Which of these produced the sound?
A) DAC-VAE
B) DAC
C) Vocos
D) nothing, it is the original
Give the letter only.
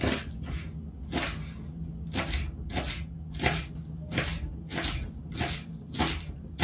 D